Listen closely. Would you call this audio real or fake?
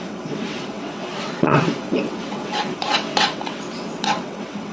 fake